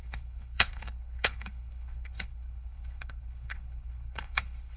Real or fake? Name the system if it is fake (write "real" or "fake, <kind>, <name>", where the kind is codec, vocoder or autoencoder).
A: fake, codec, HILCodec